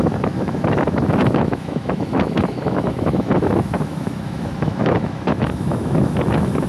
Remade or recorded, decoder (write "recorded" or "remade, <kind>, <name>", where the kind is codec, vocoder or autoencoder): remade, autoencoder, DAC-VAE